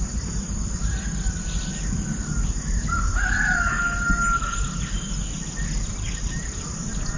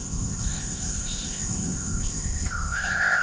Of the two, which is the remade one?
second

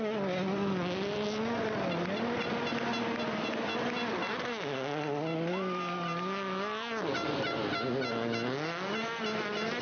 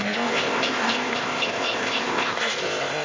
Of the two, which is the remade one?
second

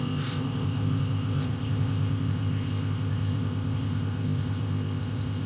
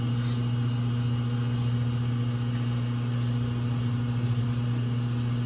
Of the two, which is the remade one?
first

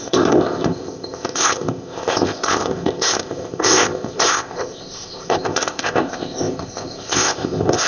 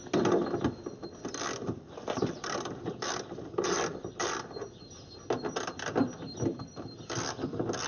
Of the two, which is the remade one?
first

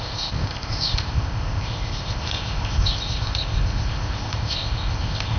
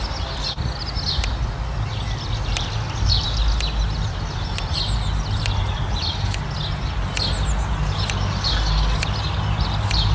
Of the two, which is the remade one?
first